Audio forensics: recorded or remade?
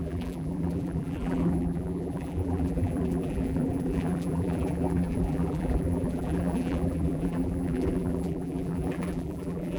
remade